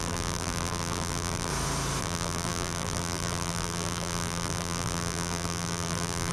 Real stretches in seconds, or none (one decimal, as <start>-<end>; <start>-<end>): 1.5-2.0